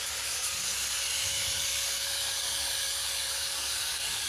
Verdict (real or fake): fake